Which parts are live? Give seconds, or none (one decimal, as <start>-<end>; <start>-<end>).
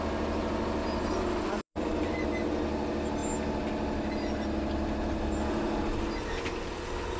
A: 0.0-0.8; 2.2-7.2